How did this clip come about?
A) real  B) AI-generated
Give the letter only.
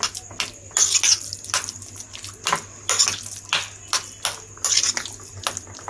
A